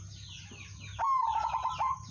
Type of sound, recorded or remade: recorded